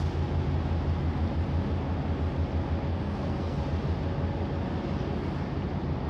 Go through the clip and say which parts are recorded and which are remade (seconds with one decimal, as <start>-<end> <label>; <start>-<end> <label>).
0.0-2.9 recorded; 2.9-3.6 remade; 3.6-6.1 recorded